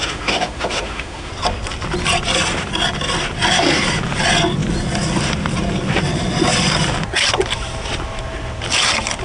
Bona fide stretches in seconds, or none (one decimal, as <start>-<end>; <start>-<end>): 1.3-9.2